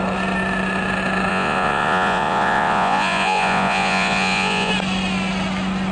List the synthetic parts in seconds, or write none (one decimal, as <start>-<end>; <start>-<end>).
1.3-4.7